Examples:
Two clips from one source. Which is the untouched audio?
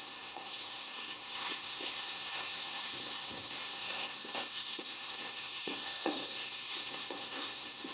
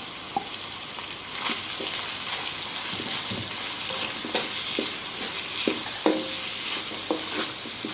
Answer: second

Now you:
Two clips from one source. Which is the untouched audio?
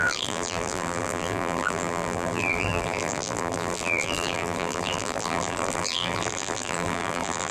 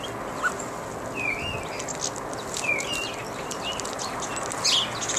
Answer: second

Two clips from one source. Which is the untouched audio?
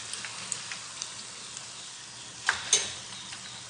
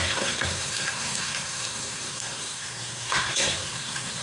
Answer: first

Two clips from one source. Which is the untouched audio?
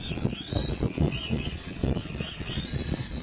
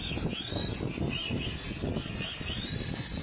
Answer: second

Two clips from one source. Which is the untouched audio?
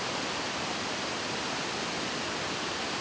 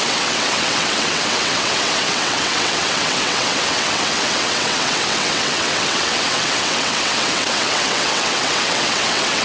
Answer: first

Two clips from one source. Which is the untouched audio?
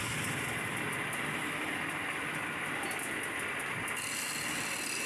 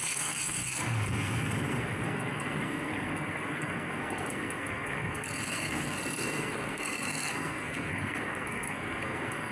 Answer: first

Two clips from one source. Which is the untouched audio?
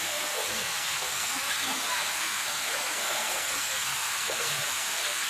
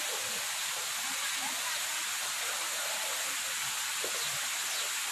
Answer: second